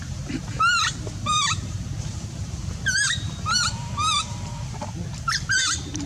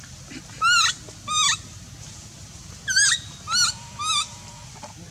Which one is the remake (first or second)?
first